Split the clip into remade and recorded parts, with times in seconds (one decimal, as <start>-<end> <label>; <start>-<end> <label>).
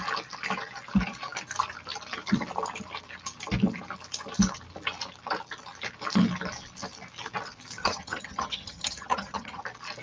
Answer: 0.0-7.8 recorded; 7.8-9.6 remade; 9.6-10.0 recorded